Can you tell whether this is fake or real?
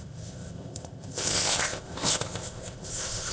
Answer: fake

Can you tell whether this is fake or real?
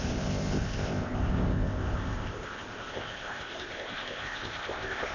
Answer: fake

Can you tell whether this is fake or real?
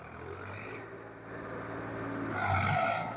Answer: real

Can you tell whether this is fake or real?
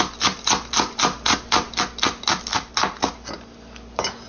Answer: real